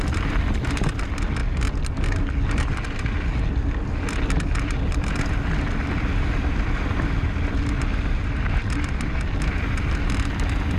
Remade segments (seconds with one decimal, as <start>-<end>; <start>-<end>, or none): none